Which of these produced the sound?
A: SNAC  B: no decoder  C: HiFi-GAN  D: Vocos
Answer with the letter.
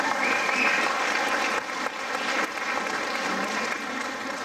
B